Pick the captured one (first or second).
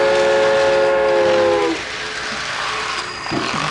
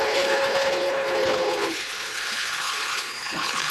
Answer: first